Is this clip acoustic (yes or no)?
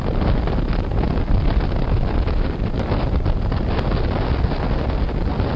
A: yes